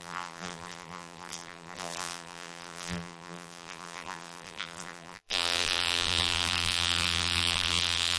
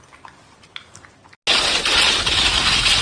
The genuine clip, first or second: second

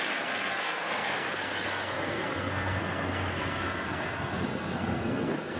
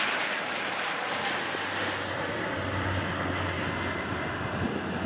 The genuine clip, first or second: second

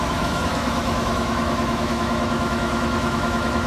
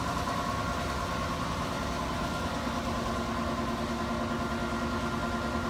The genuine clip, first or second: second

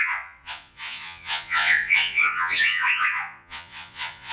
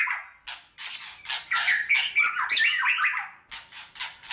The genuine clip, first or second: second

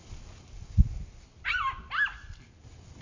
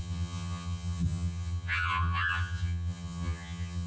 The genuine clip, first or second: first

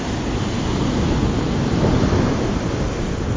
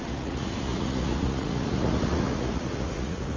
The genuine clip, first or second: first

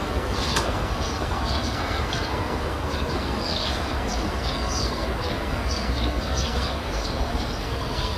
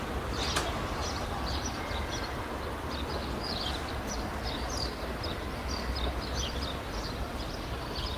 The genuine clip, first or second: second